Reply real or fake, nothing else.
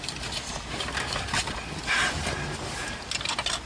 real